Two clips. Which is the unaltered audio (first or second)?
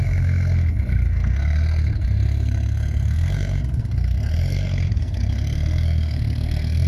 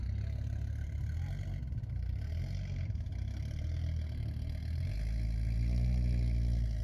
second